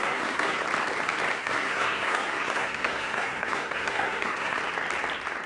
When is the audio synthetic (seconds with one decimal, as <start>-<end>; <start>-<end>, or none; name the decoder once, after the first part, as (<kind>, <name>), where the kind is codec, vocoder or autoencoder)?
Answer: 0.0-0.6 (codec, SNAC); 1.3-4.6